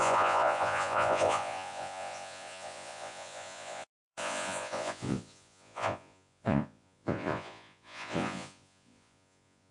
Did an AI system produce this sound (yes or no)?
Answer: yes